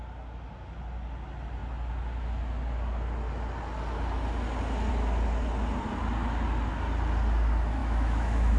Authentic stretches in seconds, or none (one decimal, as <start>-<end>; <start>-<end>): 0.0-7.8